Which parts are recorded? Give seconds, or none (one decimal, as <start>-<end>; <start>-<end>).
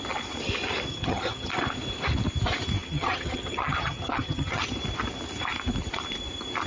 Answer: 0.0-0.9; 1.5-2.8; 4.7-6.7